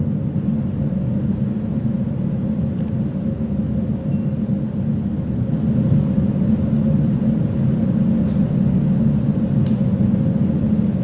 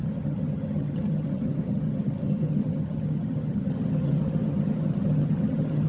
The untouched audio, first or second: first